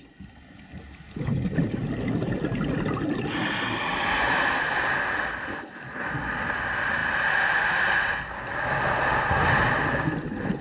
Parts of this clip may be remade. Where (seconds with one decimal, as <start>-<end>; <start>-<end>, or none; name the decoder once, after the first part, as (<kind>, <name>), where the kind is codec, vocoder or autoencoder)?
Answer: none